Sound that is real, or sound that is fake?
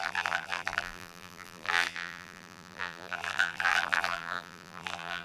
fake